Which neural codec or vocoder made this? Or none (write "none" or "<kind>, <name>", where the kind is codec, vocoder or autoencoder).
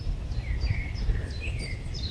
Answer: vocoder, BigVGAN v2